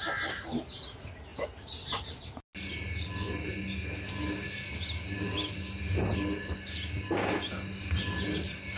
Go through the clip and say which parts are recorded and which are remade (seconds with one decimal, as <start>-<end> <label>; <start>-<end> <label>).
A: 0.0-8.8 recorded

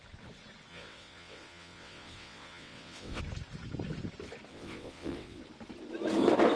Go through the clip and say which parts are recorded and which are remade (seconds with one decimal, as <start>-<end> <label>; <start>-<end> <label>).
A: 0.0-0.7 recorded; 0.7-3.2 remade; 3.2-4.5 recorded; 4.5-5.4 remade; 5.4-6.6 recorded

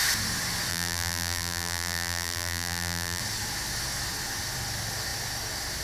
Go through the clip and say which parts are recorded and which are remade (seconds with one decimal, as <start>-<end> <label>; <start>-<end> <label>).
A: 0.0-0.7 recorded; 0.7-3.2 remade; 3.2-5.8 recorded

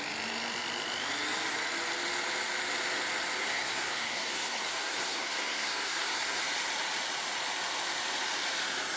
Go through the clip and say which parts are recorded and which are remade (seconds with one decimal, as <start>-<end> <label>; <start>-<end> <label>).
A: 0.0-3.4 recorded; 3.4-6.4 remade; 6.4-9.0 recorded

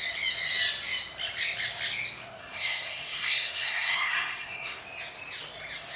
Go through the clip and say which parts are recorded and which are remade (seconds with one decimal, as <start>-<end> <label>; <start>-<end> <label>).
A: 0.0-2.4 recorded; 2.4-4.8 remade; 4.8-6.0 recorded